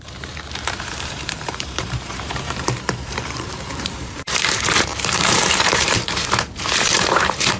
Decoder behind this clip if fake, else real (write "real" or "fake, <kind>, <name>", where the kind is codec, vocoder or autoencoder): fake, vocoder, BigVGAN v2